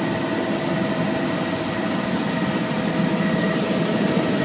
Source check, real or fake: real